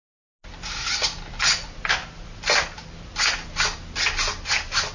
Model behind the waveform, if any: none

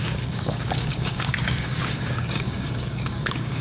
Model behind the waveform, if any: codec, DAC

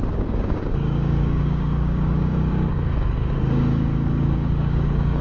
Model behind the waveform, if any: codec, DAC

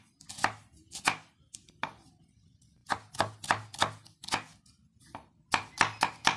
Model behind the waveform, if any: none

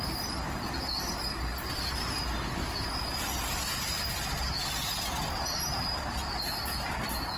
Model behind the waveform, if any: none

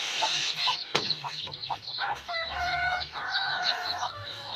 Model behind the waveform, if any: codec, DAC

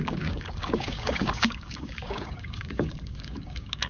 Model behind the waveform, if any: codec, DAC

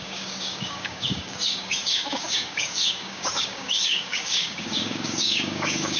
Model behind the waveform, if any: codec, DAC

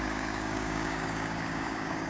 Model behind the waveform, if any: codec, DAC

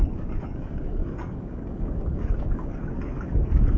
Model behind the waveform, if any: codec, DAC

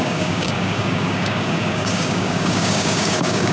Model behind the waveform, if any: codec, DAC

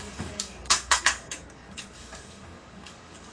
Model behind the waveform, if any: codec, DAC